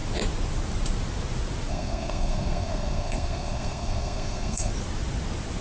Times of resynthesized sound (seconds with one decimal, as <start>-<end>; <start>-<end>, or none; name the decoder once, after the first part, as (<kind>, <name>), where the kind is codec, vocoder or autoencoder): 1.7-4.7 (codec, SNAC)